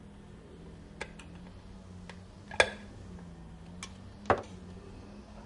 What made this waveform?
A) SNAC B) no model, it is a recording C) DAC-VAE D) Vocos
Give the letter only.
B